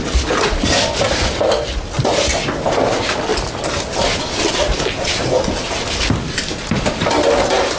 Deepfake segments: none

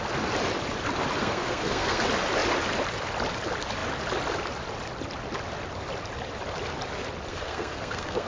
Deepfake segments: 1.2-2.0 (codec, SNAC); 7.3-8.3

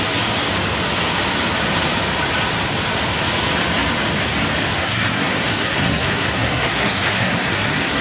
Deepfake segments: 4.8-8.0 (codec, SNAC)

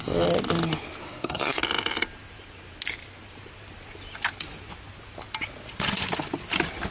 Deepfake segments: 1.0-1.6 (codec, SNAC)